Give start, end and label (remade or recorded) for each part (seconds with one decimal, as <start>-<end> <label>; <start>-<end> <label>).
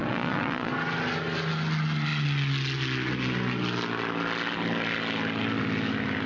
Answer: 0.0-0.7 remade; 0.7-6.3 recorded